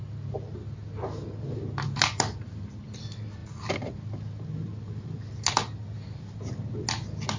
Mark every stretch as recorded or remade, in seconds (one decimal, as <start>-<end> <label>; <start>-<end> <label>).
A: 0.0-7.4 recorded